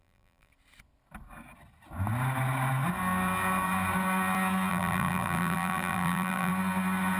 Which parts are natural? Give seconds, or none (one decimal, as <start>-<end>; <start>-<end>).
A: 0.5-4.7; 6.5-7.2

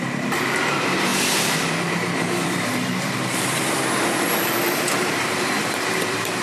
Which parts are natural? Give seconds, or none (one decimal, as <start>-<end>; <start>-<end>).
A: none

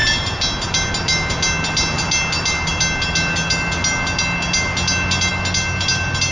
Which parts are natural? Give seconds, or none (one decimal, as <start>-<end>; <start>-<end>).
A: 0.0-6.3

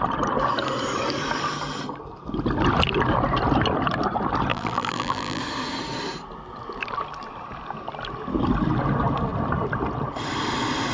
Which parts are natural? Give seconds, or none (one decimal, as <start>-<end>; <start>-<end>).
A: 0.0-4.5; 5.4-10.9

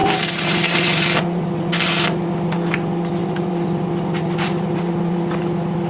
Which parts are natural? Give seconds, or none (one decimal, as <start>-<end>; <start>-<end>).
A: 1.7-3.2; 4.9-5.9